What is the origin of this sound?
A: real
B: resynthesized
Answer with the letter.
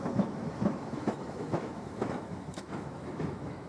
B